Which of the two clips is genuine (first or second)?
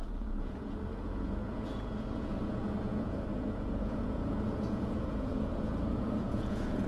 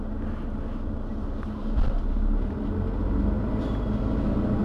second